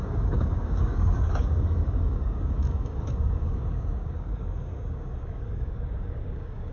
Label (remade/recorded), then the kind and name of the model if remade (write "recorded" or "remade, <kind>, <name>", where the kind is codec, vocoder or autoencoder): remade, codec, DAC